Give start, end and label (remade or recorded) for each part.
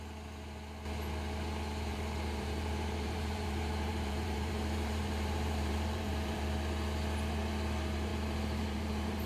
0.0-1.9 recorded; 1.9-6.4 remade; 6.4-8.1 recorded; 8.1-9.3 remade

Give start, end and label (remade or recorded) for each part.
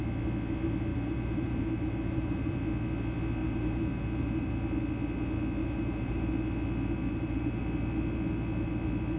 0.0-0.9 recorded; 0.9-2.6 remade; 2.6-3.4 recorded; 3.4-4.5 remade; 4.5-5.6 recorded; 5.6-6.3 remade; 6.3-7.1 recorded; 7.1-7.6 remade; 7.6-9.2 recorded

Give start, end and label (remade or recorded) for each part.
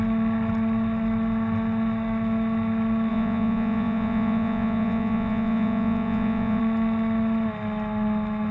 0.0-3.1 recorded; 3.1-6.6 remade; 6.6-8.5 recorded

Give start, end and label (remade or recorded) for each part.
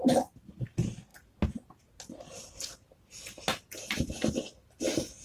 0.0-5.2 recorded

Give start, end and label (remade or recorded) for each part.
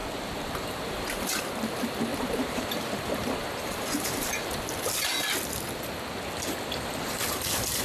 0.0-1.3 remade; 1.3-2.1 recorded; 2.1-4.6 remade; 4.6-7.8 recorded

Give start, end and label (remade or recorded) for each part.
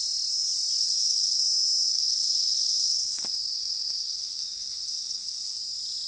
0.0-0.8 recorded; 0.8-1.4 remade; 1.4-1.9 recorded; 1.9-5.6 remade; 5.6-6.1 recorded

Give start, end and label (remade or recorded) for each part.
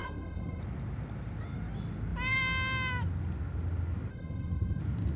0.0-0.6 remade; 0.6-4.1 recorded; 4.1-4.8 remade; 4.8-5.2 recorded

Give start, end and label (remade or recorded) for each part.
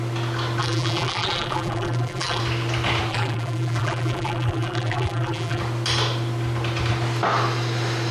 0.0-0.6 recorded; 0.6-2.4 remade; 2.4-3.1 recorded; 3.1-5.6 remade; 5.6-8.1 recorded